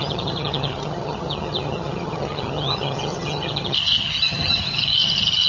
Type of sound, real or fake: fake